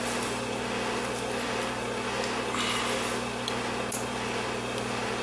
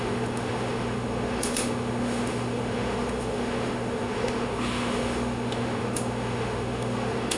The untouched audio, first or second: first